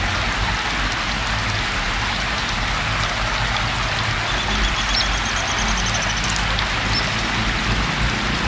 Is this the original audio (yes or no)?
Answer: yes